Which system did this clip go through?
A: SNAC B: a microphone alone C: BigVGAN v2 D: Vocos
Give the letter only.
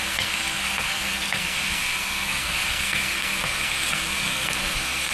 A